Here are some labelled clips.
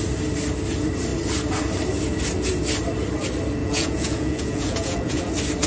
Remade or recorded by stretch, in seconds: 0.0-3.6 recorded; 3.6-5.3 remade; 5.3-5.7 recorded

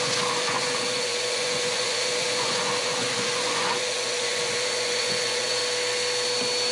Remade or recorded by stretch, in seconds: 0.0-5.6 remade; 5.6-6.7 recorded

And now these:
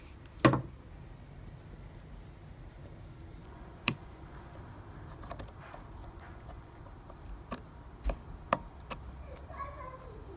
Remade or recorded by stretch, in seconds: 0.0-3.4 recorded; 3.4-4.6 remade; 4.6-6.0 recorded; 6.0-6.8 remade; 6.8-10.4 recorded

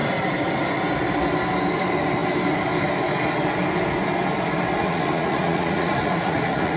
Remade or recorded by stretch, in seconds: 0.0-4.8 recorded; 4.8-6.8 remade

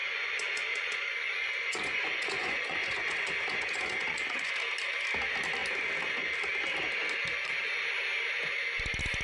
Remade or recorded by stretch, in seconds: 0.0-4.5 remade; 4.5-9.2 recorded

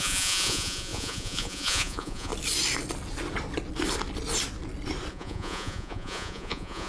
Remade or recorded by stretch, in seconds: 0.0-2.3 remade; 2.3-5.1 recorded; 5.1-6.9 remade

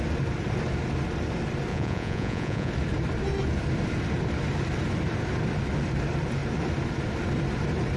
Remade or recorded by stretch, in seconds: 0.0-1.7 recorded; 1.7-2.7 remade; 2.7-8.0 recorded